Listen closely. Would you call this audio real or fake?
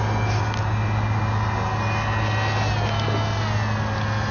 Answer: real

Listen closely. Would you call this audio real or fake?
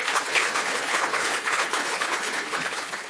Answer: fake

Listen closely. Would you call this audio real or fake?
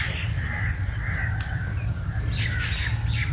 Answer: real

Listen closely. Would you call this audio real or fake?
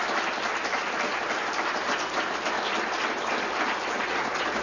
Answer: real